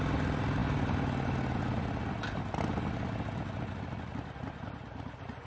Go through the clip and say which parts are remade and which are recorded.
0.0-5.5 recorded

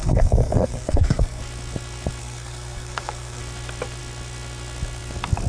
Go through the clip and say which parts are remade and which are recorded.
0.0-1.4 remade; 1.4-2.2 recorded; 2.2-3.4 remade; 3.4-5.5 recorded

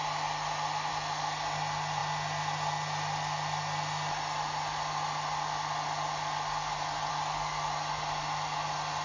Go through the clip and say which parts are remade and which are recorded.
0.0-9.0 recorded